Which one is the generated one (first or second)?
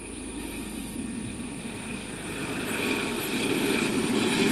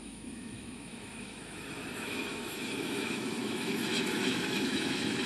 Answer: second